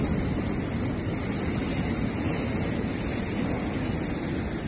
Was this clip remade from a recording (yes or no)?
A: no